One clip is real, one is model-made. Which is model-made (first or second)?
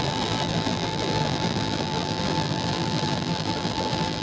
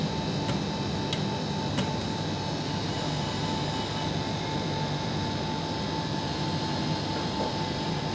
first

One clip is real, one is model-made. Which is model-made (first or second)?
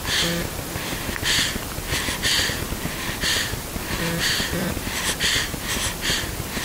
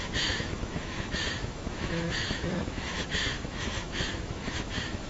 second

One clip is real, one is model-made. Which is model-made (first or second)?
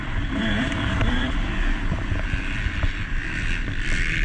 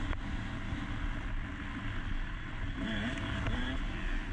first